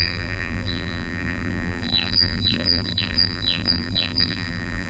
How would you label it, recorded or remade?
remade